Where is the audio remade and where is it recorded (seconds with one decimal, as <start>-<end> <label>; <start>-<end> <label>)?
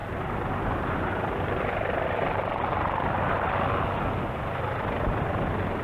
0.0-3.5 remade; 3.5-5.8 recorded